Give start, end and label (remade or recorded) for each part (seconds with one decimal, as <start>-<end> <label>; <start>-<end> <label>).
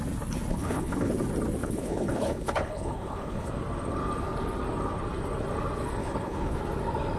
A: 0.0-0.5 recorded; 0.5-1.1 remade; 1.1-1.6 recorded; 1.6-3.5 remade; 3.5-6.0 recorded; 6.0-6.6 remade; 6.6-7.2 recorded